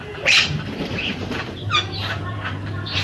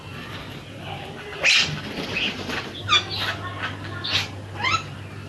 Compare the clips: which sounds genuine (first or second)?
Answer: second